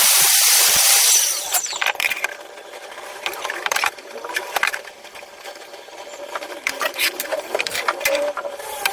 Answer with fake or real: fake